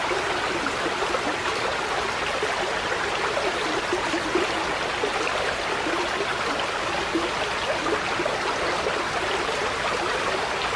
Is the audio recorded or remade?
recorded